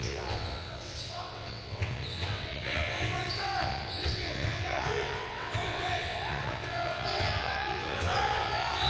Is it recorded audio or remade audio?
remade